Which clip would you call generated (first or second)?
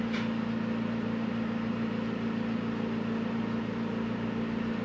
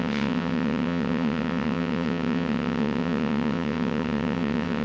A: second